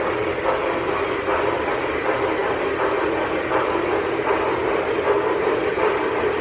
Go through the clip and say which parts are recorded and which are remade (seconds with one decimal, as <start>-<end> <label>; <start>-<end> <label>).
0.0-6.4 recorded